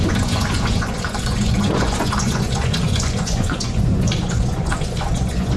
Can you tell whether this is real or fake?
fake